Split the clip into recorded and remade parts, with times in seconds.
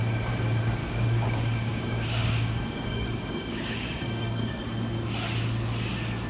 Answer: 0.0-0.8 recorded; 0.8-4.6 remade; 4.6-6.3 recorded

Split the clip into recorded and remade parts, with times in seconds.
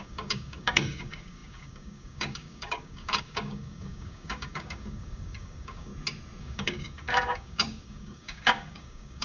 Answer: 0.0-5.9 remade; 5.9-6.4 recorded; 6.4-9.2 remade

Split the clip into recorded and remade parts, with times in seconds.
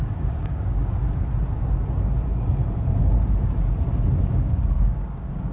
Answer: 0.0-1.0 remade; 1.0-4.3 recorded; 4.3-5.5 remade